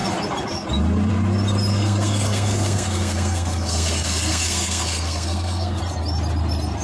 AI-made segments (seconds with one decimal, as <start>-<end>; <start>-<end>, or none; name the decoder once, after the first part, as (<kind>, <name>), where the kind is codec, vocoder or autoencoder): 1.7-5.8 (codec, SNAC)